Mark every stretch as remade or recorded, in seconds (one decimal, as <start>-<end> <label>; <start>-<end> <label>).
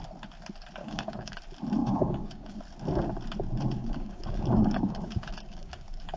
0.0-0.8 recorded; 0.8-1.4 remade; 1.4-1.8 recorded; 1.8-2.6 remade; 2.6-3.8 recorded; 3.8-6.2 remade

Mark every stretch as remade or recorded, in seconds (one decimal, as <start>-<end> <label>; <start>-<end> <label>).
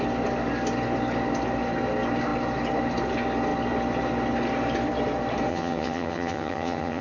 0.0-5.5 recorded; 5.5-7.0 remade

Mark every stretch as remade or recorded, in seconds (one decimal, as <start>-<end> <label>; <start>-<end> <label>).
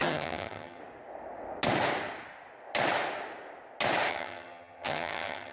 0.0-0.8 remade; 0.8-4.1 recorded; 4.1-5.5 remade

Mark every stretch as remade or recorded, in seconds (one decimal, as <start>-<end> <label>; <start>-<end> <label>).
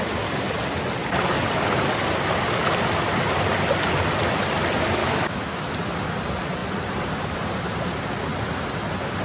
0.0-5.0 recorded; 5.0-5.7 remade; 5.7-9.2 recorded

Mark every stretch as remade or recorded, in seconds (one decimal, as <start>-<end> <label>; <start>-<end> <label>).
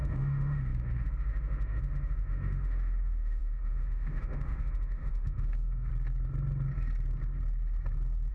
0.0-5.9 remade; 5.9-8.3 recorded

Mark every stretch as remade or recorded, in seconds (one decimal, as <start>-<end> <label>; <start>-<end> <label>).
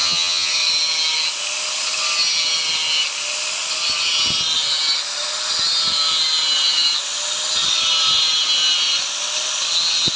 0.0-0.5 remade; 0.5-10.2 recorded